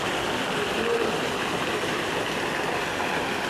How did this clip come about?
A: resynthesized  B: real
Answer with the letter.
B